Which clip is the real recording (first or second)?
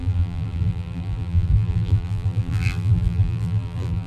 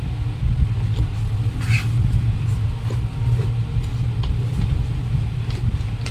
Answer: second